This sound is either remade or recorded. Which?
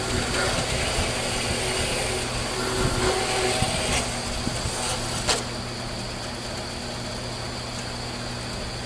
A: recorded